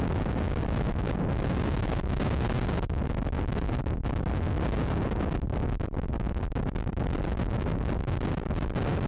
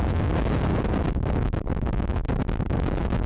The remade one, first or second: second